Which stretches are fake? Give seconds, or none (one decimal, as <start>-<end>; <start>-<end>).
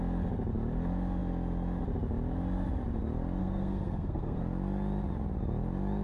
3.4-4.4